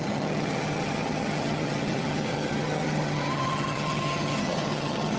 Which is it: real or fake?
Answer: fake